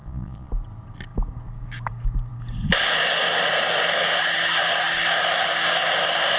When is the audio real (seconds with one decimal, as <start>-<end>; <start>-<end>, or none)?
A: 0.5-6.4